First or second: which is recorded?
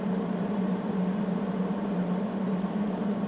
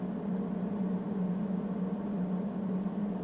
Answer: second